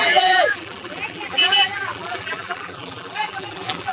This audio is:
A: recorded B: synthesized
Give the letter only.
B